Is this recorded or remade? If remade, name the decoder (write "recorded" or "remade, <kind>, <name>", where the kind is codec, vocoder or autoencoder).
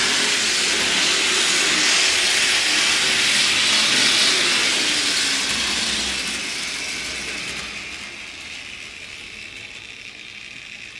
recorded